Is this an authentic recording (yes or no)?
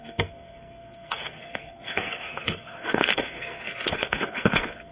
no